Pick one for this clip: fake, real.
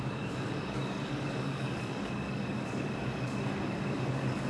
fake